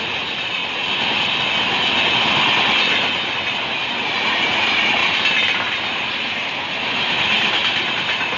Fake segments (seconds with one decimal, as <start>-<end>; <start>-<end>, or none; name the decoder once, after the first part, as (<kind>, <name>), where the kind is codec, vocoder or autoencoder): 0.0-0.6 (vocoder, Vocos); 4.2-5.0; 7.9-8.4